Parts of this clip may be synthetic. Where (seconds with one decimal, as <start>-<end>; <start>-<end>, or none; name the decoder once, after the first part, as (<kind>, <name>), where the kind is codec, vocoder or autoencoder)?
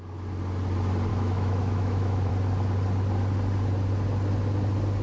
1.1-2.3 (autoencoder, DAC-VAE)